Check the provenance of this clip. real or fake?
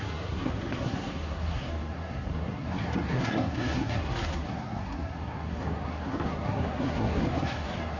fake